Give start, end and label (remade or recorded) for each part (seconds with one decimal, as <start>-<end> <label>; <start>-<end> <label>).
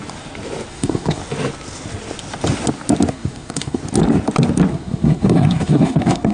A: 0.0-0.7 recorded; 0.7-1.2 remade; 1.2-3.1 recorded; 3.1-3.8 remade; 3.8-4.7 recorded; 4.7-6.3 remade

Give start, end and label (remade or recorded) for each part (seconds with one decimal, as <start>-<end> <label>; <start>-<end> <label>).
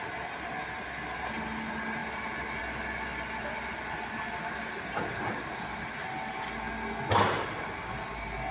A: 0.0-8.5 recorded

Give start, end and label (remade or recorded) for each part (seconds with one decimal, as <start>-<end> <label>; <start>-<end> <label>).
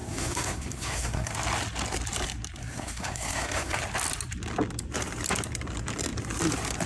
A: 0.0-1.3 remade; 1.3-2.6 recorded; 2.6-3.8 remade; 3.8-6.9 recorded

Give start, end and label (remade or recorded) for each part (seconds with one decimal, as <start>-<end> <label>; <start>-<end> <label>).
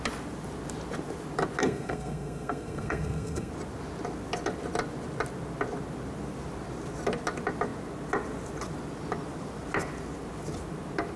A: 0.0-1.6 recorded; 1.6-3.5 remade; 3.5-11.2 recorded